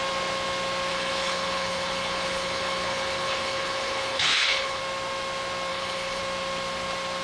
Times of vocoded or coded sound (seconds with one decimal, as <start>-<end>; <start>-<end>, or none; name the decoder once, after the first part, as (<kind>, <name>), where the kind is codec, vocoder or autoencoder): 0.9-4.8 (codec, HILCodec); 5.7-6.2